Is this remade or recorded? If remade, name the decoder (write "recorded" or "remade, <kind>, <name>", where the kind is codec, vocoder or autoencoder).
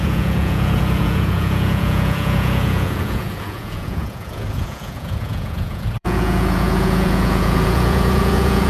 remade, vocoder, Vocos